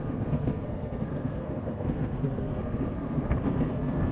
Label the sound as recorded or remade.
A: remade